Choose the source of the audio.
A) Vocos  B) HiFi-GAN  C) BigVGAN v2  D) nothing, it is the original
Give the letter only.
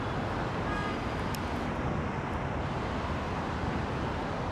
D